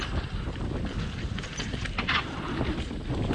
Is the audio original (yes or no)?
yes